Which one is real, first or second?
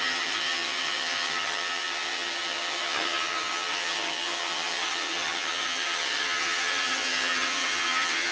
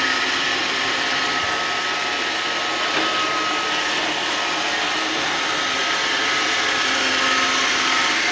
second